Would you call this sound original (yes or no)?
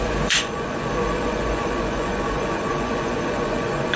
no